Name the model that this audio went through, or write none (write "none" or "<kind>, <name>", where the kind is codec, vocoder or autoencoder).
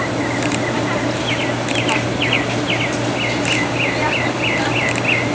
none